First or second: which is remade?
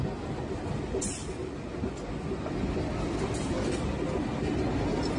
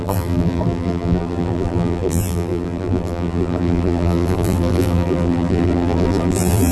second